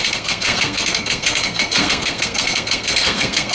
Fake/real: fake